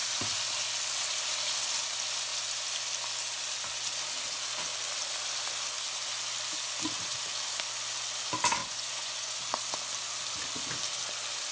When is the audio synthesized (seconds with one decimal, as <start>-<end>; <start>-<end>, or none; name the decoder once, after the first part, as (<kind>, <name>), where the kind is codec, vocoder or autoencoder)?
8.6-9.4 (vocoder, Vocos)